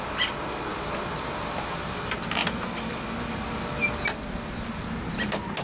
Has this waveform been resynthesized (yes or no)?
no